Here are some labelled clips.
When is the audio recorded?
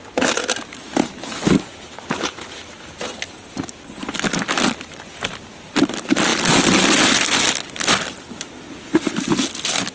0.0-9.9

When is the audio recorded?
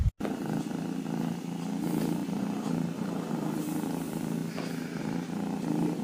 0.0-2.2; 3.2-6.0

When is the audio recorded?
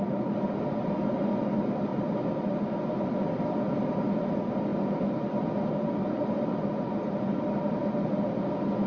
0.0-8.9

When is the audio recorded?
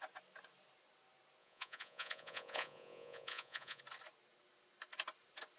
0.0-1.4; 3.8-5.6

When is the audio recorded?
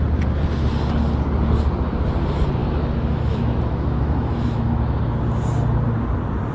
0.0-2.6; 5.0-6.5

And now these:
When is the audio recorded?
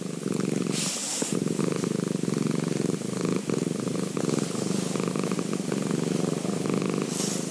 0.0-7.5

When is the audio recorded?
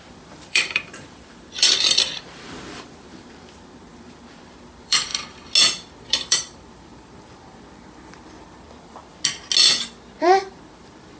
5.1-6.0; 9.0-10.2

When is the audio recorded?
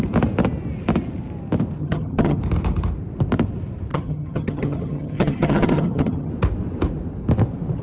0.0-1.8; 2.4-3.9; 6.3-7.8